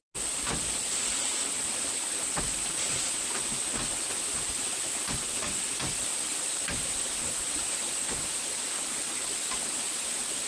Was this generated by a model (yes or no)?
no